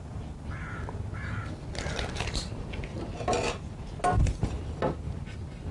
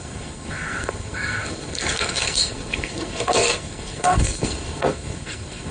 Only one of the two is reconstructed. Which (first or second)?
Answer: second